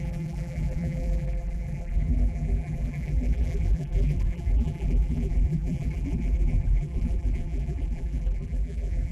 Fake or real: fake